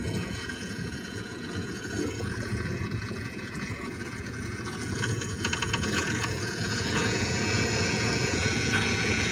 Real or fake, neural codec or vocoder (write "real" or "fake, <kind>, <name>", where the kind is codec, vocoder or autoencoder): fake, vocoder, Vocos